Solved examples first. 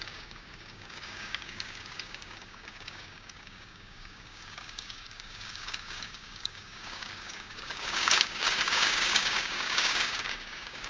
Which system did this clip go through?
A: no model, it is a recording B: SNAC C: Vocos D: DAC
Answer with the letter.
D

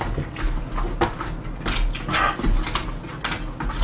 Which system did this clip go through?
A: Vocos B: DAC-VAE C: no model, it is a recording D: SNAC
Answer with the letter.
C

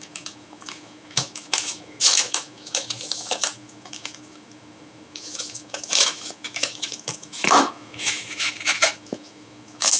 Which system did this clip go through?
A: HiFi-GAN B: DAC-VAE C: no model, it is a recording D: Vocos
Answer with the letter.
B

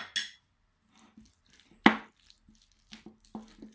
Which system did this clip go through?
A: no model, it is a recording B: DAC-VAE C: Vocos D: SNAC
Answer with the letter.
A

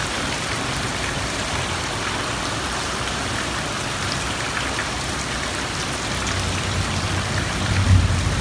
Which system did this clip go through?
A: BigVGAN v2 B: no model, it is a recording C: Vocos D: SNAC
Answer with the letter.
B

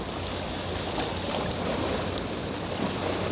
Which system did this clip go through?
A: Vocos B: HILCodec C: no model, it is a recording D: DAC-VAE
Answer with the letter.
C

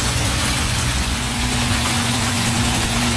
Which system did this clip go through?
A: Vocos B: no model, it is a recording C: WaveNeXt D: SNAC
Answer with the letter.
A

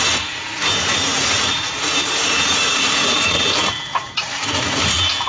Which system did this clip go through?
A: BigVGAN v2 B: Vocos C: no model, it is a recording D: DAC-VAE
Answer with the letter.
B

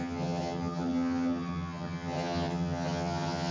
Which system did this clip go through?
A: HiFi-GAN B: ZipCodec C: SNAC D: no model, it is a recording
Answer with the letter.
A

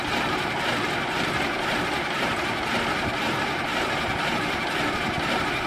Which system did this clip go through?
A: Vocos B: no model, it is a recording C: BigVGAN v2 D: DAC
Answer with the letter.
B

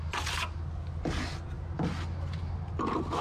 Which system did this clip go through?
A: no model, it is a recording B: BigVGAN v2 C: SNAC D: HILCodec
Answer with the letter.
A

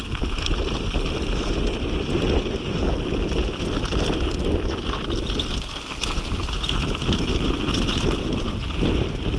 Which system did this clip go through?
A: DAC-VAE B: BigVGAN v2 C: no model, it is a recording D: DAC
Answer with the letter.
C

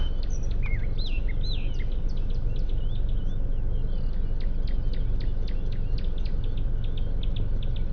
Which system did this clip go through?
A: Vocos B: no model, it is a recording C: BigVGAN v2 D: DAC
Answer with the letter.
B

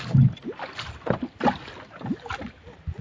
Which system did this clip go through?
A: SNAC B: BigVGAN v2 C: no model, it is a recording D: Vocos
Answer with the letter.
C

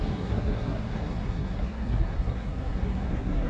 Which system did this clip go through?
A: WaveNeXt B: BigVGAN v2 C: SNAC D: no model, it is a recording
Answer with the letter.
C